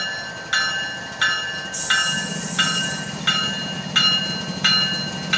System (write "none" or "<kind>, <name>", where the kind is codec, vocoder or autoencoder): none